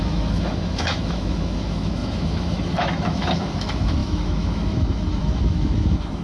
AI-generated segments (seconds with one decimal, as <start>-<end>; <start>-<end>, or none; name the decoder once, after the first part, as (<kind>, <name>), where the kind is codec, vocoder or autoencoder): 0.0-6.2 (autoencoder, DAC-VAE)